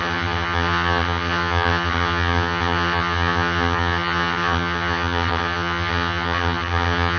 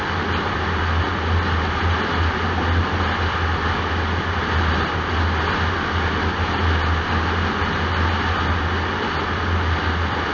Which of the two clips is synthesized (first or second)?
first